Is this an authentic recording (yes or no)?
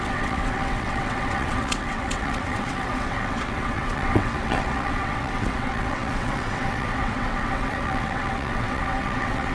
no